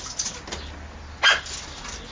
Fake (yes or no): no